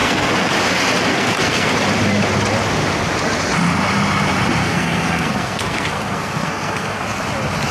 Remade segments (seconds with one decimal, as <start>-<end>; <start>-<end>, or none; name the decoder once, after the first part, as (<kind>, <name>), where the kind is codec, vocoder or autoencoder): 0.0-0.5 (codec, SNAC); 1.1-1.7; 4.6-7.2